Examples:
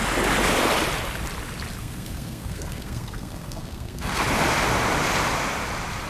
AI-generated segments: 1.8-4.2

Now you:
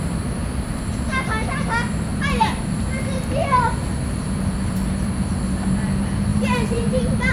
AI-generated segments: none

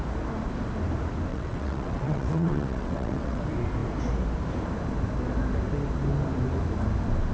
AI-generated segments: 1.3-3.4

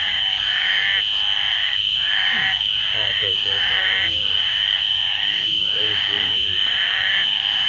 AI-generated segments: 0.0-0.9; 1.5-7.7

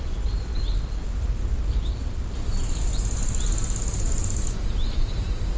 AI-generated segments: none